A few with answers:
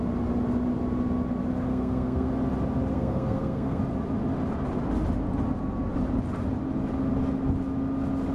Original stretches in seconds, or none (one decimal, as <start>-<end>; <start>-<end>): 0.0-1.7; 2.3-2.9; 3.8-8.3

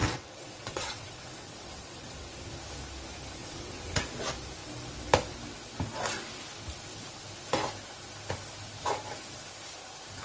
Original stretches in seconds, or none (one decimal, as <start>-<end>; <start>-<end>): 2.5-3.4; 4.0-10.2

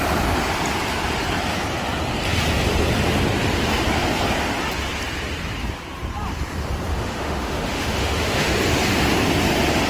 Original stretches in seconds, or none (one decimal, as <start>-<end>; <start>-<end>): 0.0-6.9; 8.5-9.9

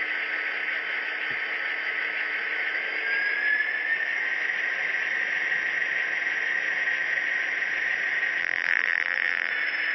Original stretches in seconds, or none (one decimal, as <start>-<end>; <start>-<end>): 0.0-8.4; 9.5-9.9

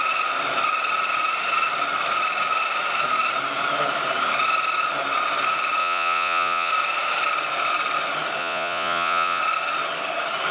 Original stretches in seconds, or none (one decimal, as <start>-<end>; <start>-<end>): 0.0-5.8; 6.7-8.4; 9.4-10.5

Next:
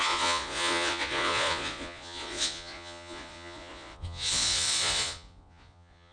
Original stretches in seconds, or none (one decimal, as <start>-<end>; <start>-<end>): none

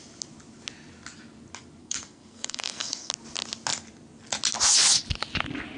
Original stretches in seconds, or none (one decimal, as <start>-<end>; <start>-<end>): 0.0-1.8; 3.1-5.8